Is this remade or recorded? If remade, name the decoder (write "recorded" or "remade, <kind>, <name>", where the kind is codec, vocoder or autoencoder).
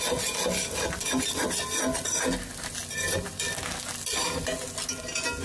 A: recorded